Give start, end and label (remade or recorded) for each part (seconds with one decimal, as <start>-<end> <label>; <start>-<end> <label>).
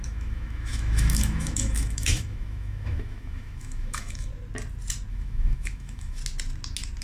0.0-4.3 remade; 4.3-5.1 recorded; 5.1-6.2 remade; 6.2-7.0 recorded